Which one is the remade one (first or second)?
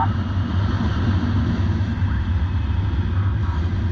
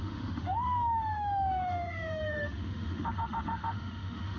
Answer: second